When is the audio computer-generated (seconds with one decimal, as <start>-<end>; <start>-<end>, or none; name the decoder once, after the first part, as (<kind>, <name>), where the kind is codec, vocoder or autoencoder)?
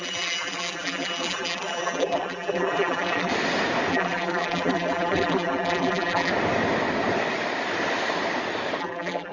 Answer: 0.0-3.3 (vocoder, BigVGAN v2); 3.9-6.3; 8.8-9.3